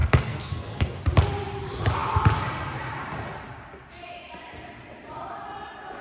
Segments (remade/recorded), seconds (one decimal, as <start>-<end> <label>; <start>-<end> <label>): 0.0-1.0 remade; 1.0-6.0 recorded